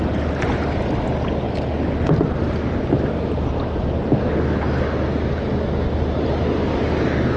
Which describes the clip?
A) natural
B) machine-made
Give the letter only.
A